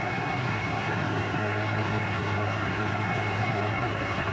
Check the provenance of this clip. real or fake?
fake